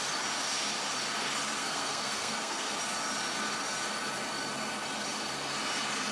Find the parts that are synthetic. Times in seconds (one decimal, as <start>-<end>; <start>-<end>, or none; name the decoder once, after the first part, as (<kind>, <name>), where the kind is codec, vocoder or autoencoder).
1.6-2.7 (codec, SNAC)